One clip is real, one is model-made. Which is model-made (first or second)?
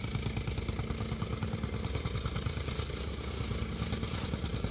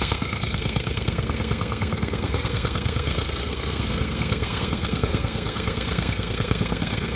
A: second